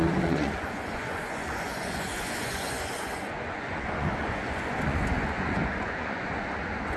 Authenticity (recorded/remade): remade